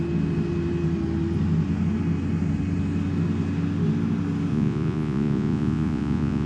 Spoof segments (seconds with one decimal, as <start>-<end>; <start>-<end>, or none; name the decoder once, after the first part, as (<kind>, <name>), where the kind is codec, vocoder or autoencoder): 4.5-6.5 (vocoder, Vocos)